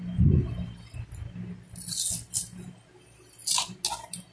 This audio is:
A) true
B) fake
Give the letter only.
A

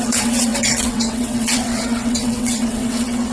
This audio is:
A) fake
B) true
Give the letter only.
A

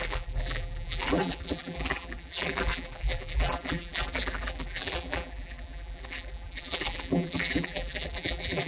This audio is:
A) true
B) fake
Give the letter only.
B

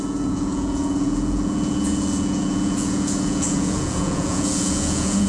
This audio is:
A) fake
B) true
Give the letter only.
A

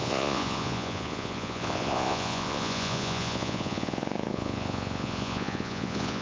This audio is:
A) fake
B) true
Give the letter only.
A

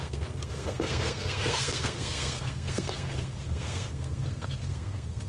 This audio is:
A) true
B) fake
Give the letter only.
B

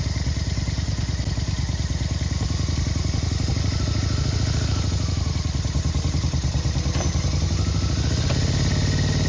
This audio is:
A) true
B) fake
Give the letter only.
A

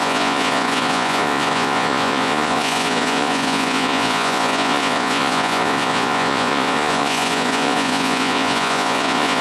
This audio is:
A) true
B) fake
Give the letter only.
B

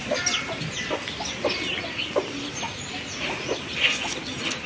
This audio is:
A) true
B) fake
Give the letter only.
A